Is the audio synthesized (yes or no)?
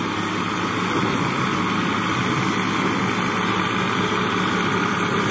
no